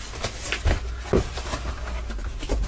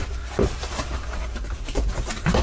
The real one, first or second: first